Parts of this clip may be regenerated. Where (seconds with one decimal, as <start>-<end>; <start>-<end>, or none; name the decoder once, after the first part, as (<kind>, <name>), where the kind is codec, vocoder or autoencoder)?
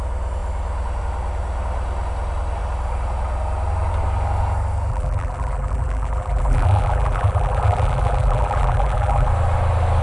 4.9-9.3 (vocoder, BigVGAN v2)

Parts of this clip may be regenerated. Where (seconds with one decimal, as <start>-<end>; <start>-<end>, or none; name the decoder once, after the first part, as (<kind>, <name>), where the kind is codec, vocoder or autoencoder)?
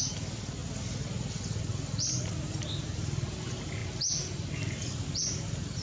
none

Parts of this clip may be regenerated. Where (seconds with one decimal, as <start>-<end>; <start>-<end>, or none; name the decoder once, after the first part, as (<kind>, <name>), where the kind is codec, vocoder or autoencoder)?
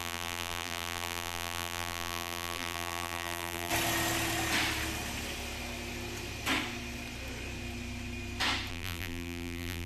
0.0-3.7 (vocoder, BigVGAN v2); 8.7-9.9